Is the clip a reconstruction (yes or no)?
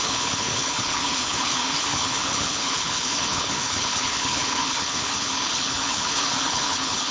yes